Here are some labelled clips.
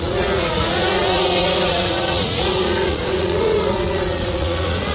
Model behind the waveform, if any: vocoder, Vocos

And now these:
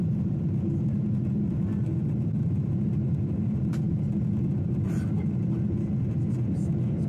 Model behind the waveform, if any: none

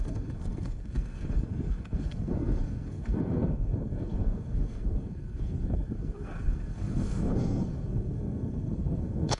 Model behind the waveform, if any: codec, SNAC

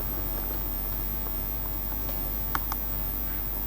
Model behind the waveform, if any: none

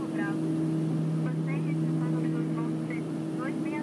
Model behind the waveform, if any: none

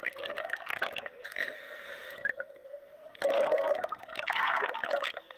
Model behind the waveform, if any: codec, SNAC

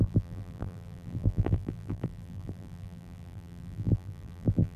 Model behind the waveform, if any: vocoder, BigVGAN v2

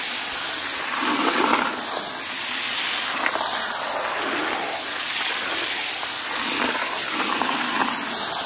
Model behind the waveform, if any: none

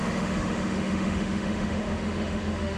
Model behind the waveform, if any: autoencoder, DAC-VAE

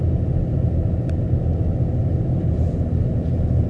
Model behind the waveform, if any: none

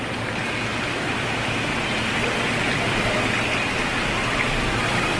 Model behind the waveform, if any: none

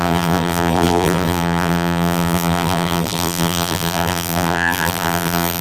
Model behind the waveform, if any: vocoder, BigVGAN v2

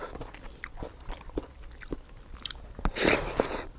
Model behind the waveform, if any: none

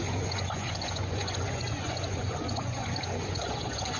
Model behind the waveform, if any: vocoder, Vocos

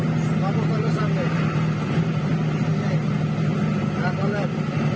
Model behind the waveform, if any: none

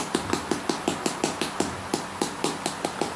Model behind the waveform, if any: none